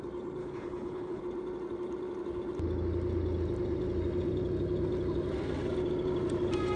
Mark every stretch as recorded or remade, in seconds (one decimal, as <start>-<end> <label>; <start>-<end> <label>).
0.0-0.4 recorded; 0.4-1.2 remade; 1.2-6.8 recorded